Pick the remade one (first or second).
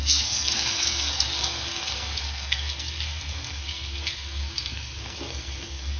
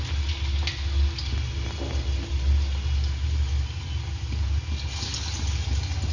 first